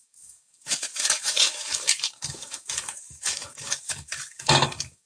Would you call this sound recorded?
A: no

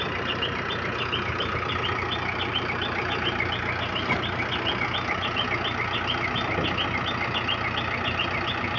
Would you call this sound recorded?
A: yes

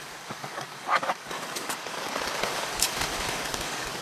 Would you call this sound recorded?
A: no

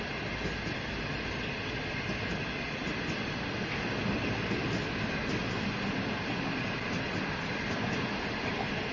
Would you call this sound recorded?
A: yes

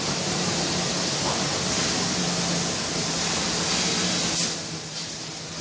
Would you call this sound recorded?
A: yes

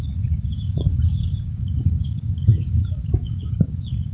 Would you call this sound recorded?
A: no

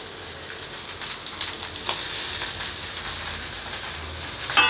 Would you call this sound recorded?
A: yes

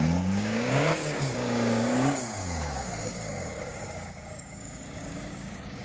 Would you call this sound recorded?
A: no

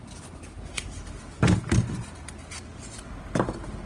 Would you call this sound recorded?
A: yes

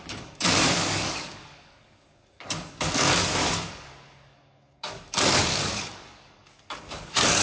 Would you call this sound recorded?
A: no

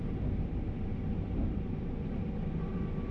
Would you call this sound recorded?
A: yes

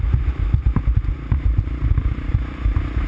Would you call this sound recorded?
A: yes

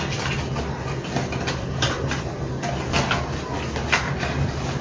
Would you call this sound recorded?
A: yes